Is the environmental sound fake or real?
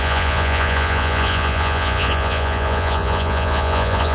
fake